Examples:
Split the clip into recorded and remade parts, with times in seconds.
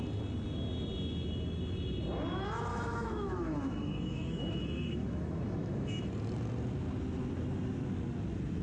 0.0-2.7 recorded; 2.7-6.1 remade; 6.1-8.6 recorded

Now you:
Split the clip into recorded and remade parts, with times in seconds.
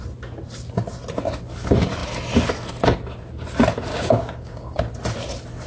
0.0-3.9 recorded; 3.9-4.9 remade; 4.9-5.7 recorded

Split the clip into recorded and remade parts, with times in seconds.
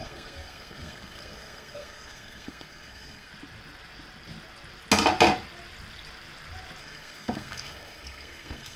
0.0-3.3 remade; 3.3-6.8 recorded; 6.8-8.8 remade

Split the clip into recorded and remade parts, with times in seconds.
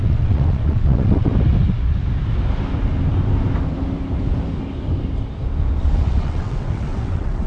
0.0-1.3 remade; 1.3-5.8 recorded; 5.8-7.5 remade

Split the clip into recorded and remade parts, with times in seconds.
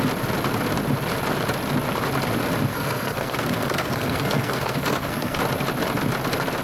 0.0-2.7 recorded; 2.7-5.4 remade; 5.4-6.6 recorded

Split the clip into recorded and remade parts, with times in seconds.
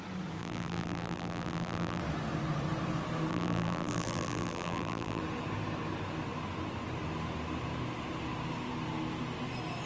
0.0-0.4 recorded; 0.4-2.0 remade; 2.0-3.3 recorded; 3.3-5.2 remade; 5.2-9.9 recorded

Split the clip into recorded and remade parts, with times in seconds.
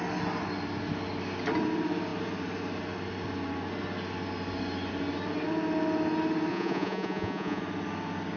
0.0-6.5 recorded; 6.5-7.6 remade; 7.6-8.4 recorded